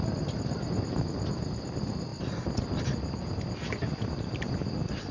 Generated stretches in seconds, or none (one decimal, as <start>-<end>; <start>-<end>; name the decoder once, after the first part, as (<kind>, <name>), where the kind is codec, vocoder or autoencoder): none